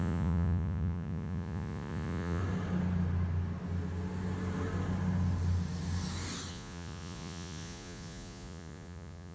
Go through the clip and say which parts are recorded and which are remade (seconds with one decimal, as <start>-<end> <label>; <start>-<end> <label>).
0.0-2.4 remade; 2.4-6.5 recorded; 6.5-9.3 remade